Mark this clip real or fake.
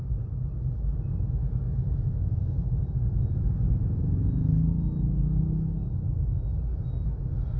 real